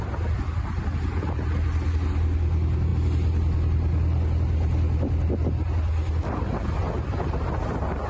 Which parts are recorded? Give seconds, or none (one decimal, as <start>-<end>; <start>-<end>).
0.0-8.1